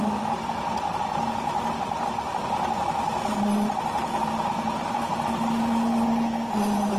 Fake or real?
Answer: real